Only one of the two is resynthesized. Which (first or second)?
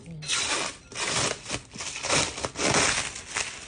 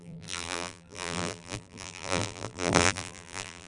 second